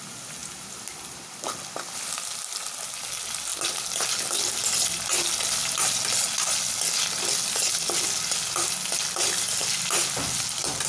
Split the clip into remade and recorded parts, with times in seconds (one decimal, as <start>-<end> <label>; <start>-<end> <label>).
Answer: 0.0-10.9 recorded